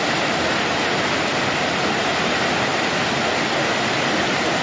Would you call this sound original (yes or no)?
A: yes